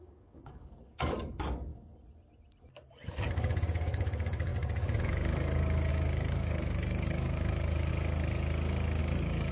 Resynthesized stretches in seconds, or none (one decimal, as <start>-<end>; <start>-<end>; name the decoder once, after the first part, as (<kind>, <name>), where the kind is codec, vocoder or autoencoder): 0.0-1.7 (codec, DAC); 3.3-7.9; 9.0-9.5